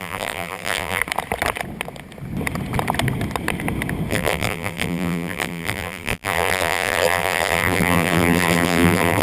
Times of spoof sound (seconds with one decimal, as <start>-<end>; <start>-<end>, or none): 0.0-1.0; 4.1-9.2